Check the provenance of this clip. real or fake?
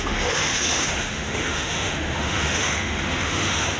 fake